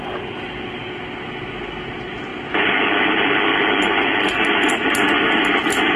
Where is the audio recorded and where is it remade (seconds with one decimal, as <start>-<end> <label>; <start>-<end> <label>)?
0.0-0.8 recorded; 0.8-1.4 remade; 1.4-3.5 recorded; 3.5-4.5 remade; 4.5-6.0 recorded